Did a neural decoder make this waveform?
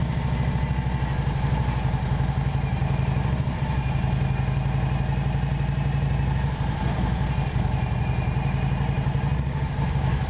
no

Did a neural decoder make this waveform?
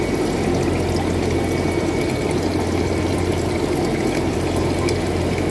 no